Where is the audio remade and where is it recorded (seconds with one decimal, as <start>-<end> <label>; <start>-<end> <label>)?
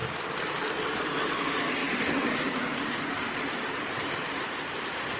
0.0-5.2 recorded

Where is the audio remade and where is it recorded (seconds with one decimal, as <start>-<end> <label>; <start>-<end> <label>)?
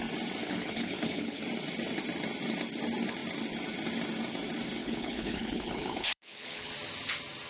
0.0-0.4 recorded; 0.4-1.4 remade; 1.4-4.8 recorded; 4.8-6.7 remade; 6.7-7.5 recorded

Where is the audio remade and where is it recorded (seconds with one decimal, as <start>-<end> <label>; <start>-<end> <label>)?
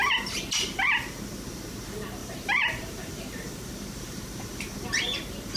0.0-2.2 recorded; 2.2-5.6 remade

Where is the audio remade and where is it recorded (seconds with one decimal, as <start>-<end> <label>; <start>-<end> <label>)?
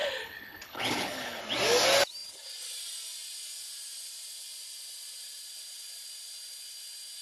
0.0-1.4 remade; 1.4-7.2 recorded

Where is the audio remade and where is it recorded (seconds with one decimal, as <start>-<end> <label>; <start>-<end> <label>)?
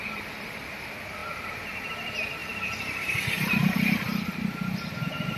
0.0-5.4 recorded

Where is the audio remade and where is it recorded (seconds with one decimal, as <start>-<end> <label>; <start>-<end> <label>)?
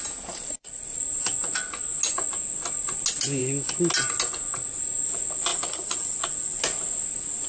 0.0-5.5 recorded; 5.5-6.6 remade; 6.6-7.5 recorded